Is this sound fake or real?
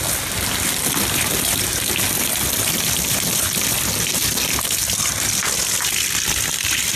real